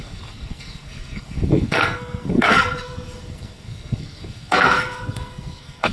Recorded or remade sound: remade